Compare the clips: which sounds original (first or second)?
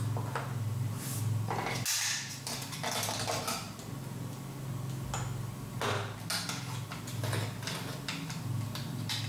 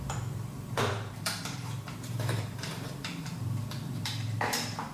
first